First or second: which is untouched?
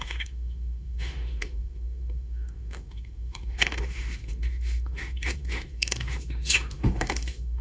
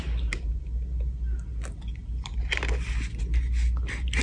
second